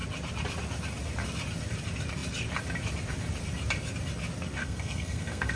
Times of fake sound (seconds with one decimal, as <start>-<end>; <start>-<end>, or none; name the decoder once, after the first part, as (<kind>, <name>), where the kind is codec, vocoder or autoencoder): 4.6-5.6 (codec, SNAC)